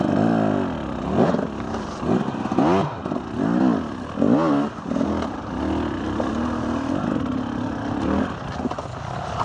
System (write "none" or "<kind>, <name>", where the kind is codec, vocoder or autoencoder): none